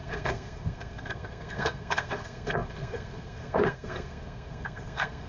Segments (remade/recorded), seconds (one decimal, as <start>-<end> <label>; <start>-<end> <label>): 0.0-5.3 remade